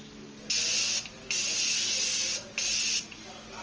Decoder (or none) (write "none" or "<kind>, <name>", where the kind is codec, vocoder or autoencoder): none